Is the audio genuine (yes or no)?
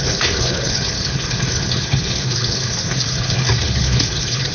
no